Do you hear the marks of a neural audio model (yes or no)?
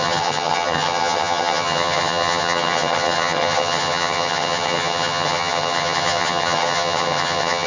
yes